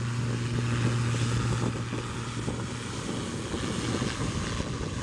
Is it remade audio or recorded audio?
recorded